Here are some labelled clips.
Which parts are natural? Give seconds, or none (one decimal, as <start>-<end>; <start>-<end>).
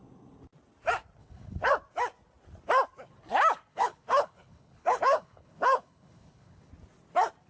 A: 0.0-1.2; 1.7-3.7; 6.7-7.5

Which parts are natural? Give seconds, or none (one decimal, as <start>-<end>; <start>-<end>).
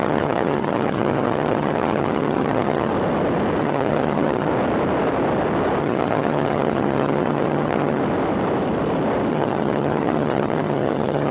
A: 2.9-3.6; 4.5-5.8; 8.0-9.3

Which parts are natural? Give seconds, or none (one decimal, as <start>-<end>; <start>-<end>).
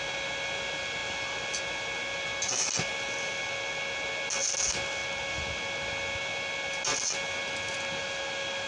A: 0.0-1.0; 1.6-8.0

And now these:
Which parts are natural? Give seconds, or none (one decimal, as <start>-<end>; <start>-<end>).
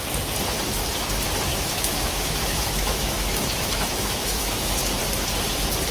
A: 0.0-1.5; 5.0-5.9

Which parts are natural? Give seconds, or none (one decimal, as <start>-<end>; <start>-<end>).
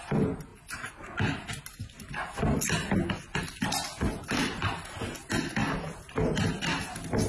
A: 0.0-7.3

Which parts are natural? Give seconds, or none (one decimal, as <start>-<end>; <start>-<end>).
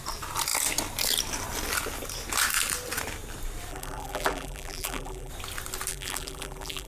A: 0.0-3.7; 5.3-5.9